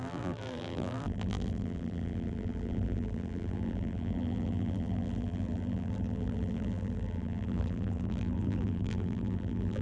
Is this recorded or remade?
remade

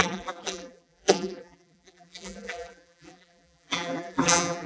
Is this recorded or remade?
remade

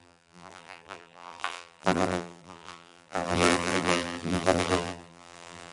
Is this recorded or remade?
remade